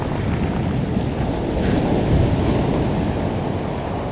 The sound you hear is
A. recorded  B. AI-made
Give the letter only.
A